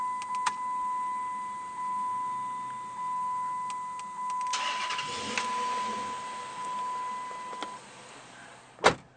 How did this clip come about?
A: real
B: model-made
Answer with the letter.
A